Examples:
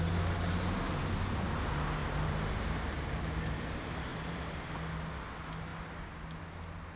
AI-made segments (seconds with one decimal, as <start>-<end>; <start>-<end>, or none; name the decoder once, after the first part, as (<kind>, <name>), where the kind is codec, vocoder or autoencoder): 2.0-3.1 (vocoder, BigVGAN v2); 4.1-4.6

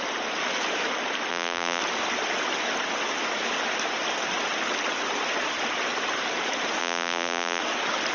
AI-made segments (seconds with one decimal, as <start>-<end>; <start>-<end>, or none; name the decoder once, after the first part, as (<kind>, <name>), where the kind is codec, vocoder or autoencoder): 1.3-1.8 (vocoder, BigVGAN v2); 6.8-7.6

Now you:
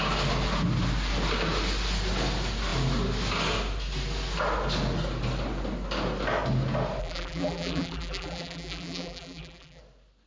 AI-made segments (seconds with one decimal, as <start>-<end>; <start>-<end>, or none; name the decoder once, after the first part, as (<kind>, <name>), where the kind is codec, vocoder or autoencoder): 7.0-9.8 (vocoder, BigVGAN v2)

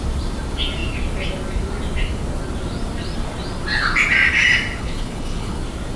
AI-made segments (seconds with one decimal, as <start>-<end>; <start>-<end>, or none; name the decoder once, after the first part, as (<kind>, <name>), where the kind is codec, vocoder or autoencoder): 4.8-5.6 (codec, HILCodec)

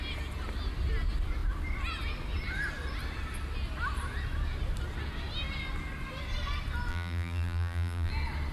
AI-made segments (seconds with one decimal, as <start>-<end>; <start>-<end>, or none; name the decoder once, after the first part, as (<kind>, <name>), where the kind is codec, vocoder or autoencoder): 6.9-8.1 (vocoder, BigVGAN v2)

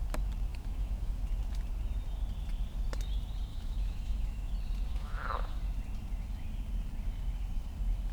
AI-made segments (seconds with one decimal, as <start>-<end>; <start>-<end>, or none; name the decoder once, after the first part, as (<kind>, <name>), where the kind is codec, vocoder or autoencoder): 0.5-1.2 (autoencoder, DAC-VAE); 3.5-4.5; 4.9-5.6

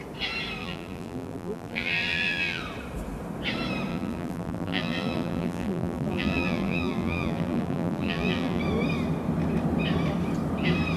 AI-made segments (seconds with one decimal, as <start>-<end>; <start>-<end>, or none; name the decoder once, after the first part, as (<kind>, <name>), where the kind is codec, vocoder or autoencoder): 0.6-2.6 (vocoder, BigVGAN v2); 3.9-8.6

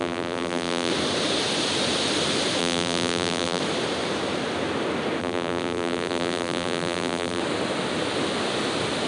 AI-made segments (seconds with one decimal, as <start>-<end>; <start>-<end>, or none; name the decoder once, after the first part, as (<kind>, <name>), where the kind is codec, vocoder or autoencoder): 0.0-0.9 (vocoder, BigVGAN v2); 2.6-3.6; 5.2-7.4